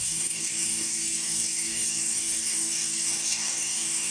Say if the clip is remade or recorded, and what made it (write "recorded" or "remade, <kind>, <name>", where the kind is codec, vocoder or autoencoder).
remade, codec, DAC